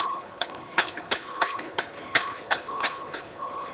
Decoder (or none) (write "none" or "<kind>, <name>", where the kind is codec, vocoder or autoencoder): codec, HILCodec